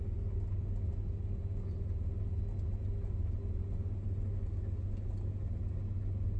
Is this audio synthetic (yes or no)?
no